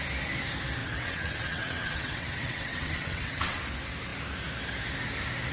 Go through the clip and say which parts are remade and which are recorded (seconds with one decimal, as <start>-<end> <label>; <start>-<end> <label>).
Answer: 0.0-0.8 recorded; 0.8-3.6 remade; 3.6-5.5 recorded